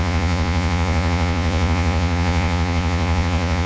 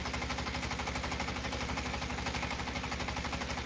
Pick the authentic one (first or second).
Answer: second